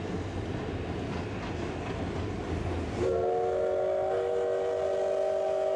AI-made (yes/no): no